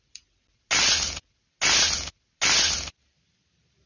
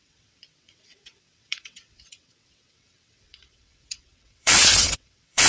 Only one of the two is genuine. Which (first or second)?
first